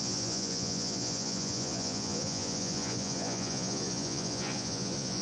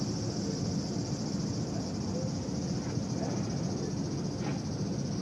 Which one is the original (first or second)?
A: second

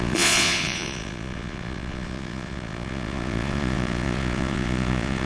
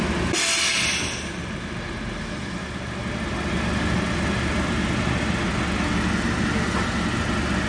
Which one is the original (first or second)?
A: second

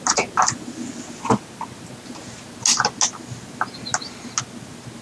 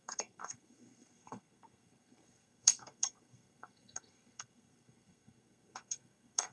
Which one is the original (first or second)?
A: first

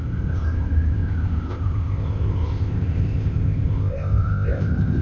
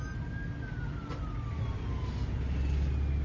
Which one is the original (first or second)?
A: second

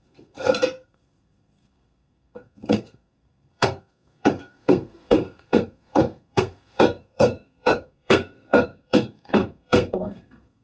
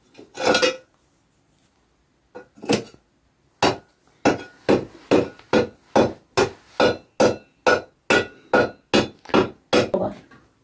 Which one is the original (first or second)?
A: second